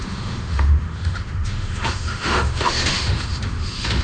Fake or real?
fake